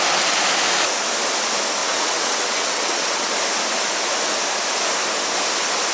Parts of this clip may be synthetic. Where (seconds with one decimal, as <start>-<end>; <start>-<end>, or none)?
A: 1.8-3.3